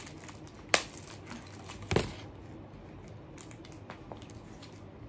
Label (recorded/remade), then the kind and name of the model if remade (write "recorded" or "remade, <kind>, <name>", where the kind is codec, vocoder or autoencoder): recorded